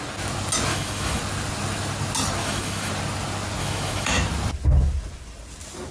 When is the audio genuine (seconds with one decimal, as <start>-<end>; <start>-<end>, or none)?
0.0-0.7; 1.2-2.4; 2.9-3.6; 4.1-5.9